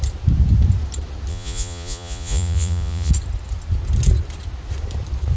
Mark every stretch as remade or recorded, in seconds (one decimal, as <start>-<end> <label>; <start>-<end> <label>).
0.0-1.3 recorded; 1.3-3.1 remade; 3.1-5.4 recorded